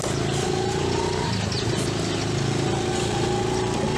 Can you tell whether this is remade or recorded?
recorded